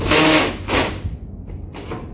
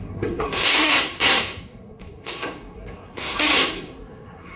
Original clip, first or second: first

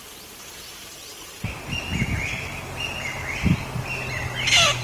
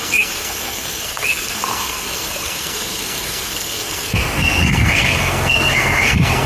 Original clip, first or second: first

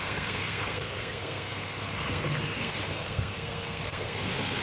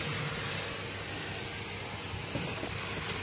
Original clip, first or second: second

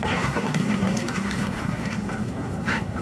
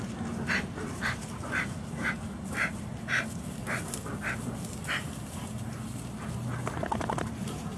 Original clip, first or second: second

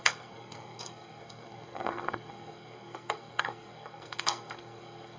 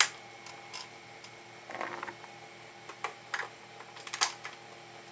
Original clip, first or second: second